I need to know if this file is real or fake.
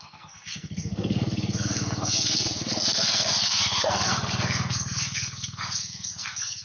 fake